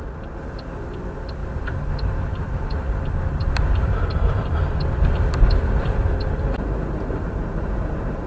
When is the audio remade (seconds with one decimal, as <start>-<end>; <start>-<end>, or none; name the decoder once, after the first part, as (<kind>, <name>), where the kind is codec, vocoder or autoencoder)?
1.4-1.9 (vocoder, BigVGAN v2); 2.3-7.3